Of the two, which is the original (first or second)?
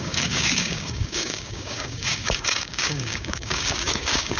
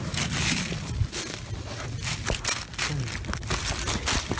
second